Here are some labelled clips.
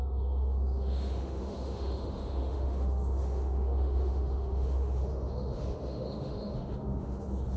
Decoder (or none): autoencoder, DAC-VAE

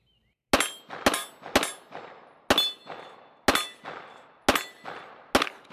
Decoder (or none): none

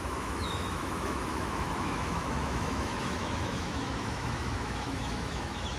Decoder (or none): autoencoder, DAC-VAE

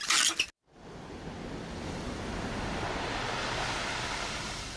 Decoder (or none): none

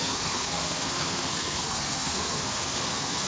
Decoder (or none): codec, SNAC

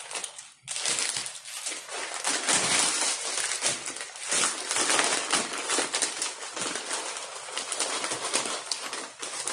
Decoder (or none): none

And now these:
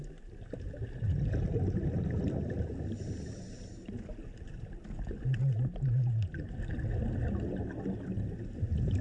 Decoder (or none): none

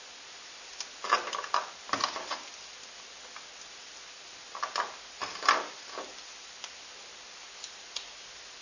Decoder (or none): none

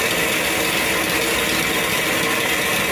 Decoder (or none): none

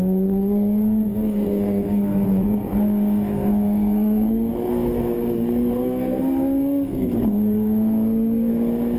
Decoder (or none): codec, SNAC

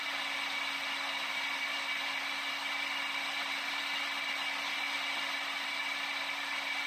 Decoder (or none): none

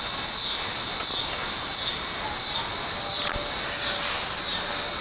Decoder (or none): none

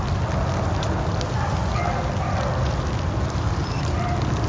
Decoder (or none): none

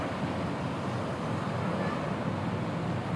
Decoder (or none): none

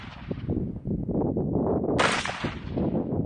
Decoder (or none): none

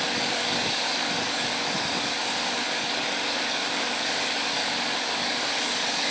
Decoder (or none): codec, DAC